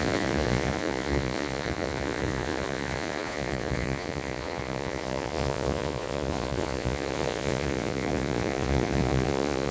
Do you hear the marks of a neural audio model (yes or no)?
yes